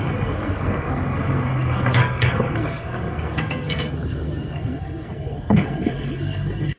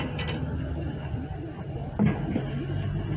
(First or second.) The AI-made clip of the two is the first